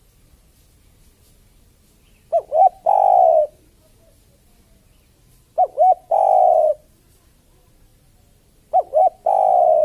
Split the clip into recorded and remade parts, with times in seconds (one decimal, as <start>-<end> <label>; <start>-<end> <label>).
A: 0.0-5.9 recorded; 5.9-6.7 remade; 6.7-9.8 recorded